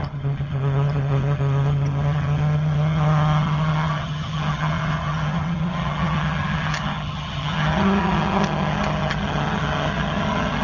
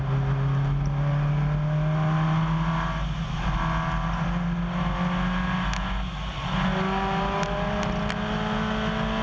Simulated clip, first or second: first